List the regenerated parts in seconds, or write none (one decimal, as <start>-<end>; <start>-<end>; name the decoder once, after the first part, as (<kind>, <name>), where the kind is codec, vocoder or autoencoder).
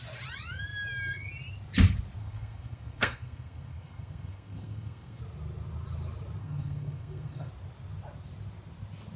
2.2-5.2 (codec, SNAC); 6.4-7.5